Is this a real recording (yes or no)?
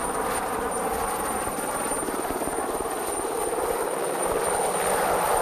yes